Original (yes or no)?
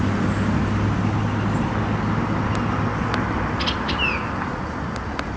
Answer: yes